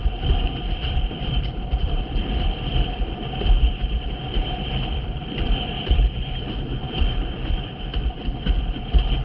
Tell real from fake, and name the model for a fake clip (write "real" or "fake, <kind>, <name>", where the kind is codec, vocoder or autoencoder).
fake, vocoder, BigVGAN v2